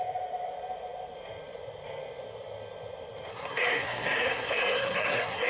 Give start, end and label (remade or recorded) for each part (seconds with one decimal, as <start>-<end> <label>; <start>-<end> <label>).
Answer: 0.0-3.3 recorded; 3.3-5.5 remade